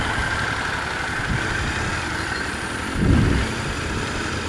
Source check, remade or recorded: recorded